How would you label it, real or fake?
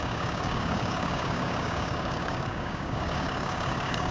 fake